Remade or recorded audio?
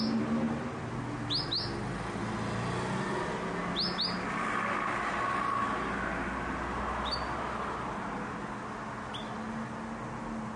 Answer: recorded